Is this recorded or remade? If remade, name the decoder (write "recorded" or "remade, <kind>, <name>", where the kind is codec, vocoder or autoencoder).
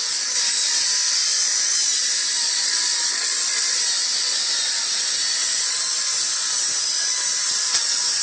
remade, vocoder, BigVGAN v2